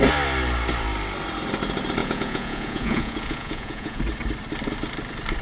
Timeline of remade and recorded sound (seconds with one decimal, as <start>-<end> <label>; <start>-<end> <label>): 0.0-2.0 recorded; 2.0-4.0 remade; 4.0-5.4 recorded